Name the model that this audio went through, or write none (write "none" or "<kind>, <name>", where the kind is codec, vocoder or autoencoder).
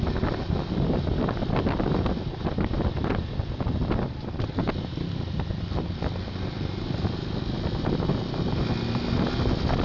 none